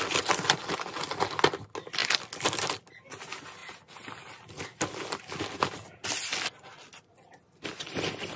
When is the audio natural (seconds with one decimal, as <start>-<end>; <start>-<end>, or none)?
0.0-8.4